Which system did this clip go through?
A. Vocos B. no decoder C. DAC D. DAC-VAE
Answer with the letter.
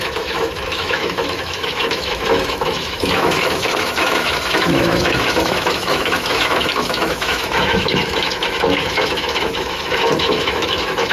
D